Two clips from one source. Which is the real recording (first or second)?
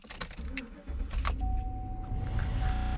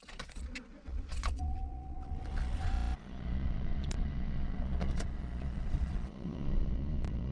first